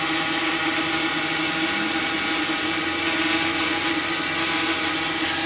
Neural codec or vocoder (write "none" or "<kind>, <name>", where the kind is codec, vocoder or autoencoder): none